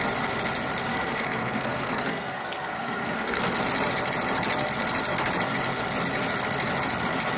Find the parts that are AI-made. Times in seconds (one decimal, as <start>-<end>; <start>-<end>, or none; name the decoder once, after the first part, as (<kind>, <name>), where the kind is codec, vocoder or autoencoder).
0.9-3.4 (codec, SNAC)